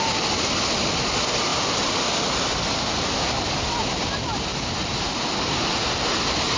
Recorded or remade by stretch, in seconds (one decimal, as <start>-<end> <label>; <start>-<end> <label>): 0.0-6.6 recorded